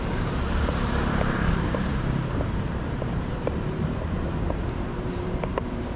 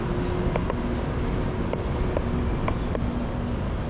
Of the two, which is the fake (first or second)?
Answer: first